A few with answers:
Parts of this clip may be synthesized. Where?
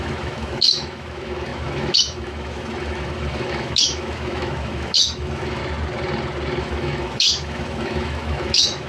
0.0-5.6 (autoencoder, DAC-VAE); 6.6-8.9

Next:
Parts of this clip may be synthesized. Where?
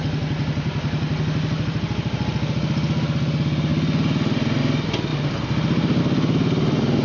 none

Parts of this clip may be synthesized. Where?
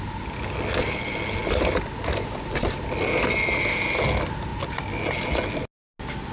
none